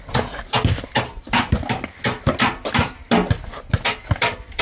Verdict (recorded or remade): recorded